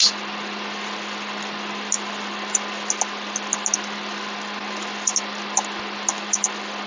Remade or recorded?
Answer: recorded